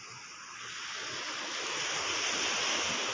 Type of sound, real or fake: real